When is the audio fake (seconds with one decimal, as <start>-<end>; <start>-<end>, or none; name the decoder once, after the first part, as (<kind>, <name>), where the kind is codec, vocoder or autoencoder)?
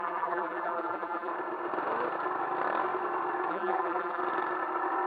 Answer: 0.0-1.3 (vocoder, BigVGAN v2); 3.5-4.2